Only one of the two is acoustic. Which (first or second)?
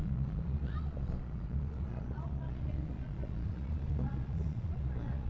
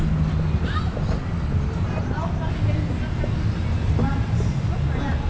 second